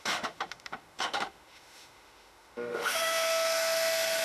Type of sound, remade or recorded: remade